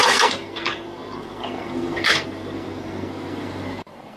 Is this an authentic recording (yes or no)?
no